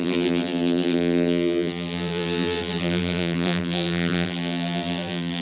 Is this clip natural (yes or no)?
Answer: no